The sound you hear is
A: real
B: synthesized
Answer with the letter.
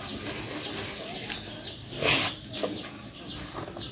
A